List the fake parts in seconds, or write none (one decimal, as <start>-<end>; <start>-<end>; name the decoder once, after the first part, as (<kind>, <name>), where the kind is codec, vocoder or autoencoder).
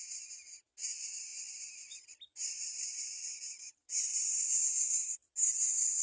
none